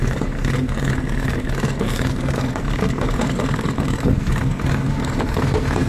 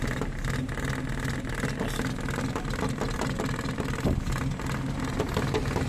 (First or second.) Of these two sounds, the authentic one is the second